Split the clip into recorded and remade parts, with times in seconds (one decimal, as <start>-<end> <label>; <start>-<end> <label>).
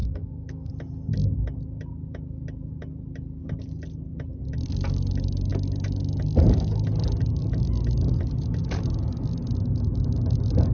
0.0-0.7 remade; 0.7-10.7 recorded